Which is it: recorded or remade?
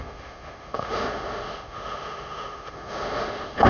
remade